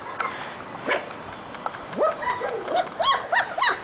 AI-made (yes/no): no